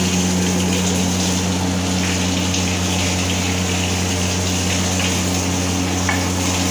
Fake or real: real